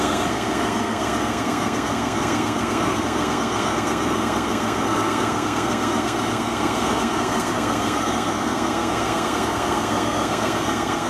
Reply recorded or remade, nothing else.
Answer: remade